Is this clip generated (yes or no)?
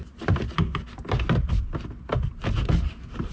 no